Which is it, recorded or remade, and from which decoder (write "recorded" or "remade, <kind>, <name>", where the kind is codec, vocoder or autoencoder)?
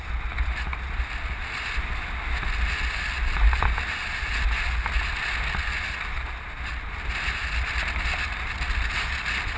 recorded